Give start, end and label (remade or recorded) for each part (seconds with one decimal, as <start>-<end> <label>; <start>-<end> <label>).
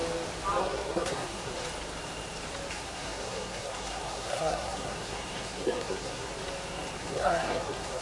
0.0-0.6 recorded; 0.6-1.5 remade; 1.5-2.7 recorded; 2.7-6.3 remade; 6.3-7.0 recorded; 7.0-8.0 remade